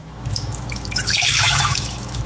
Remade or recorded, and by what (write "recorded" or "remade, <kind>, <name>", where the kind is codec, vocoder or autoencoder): remade, autoencoder, DAC-VAE